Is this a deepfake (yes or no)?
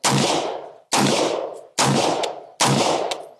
no